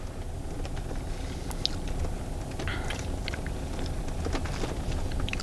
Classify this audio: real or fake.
real